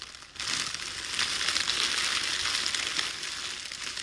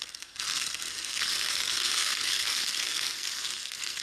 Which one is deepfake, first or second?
second